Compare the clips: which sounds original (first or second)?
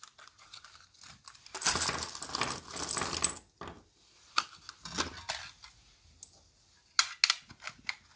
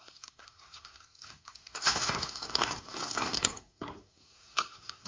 first